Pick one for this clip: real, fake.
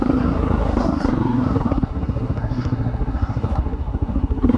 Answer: fake